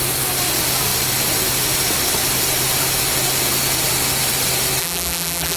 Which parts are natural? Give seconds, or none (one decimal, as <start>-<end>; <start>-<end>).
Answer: 0.0-4.8